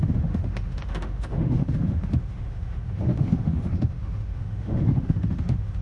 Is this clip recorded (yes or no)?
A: no